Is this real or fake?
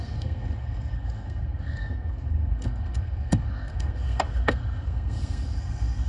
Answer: fake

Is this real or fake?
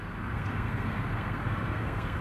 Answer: fake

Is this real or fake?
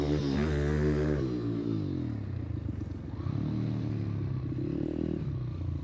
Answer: real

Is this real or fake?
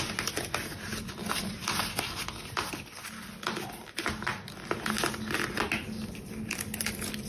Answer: real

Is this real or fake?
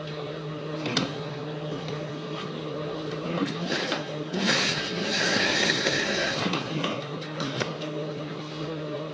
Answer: fake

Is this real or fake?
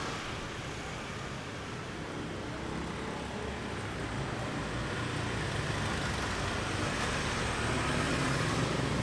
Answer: real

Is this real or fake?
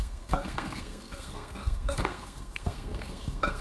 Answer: fake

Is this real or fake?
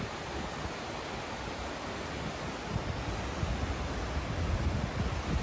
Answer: real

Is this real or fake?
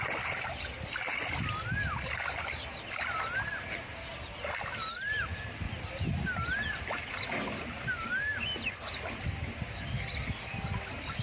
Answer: real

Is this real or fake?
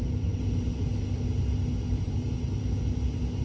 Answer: real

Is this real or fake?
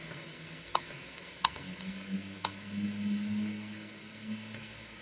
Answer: fake